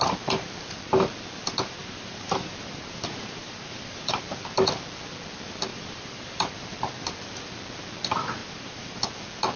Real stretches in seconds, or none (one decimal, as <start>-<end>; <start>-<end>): 0.0-1.8; 4.2-5.7; 6.5-8.4; 9.0-9.6